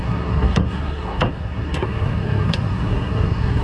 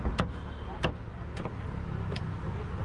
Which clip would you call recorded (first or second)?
second